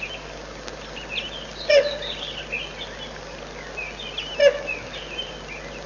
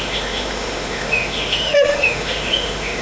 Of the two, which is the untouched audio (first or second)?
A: first